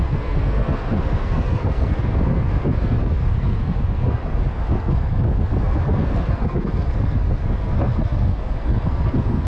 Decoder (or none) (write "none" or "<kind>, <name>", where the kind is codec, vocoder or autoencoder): codec, SNAC